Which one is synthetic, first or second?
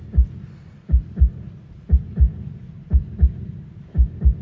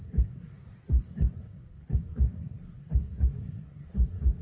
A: second